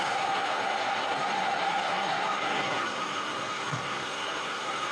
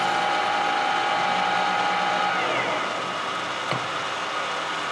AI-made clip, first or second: first